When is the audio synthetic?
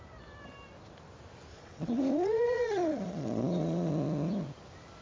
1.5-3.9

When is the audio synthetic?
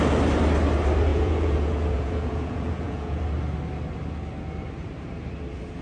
1.1-3.2